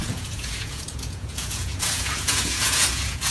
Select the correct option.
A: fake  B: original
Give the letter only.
A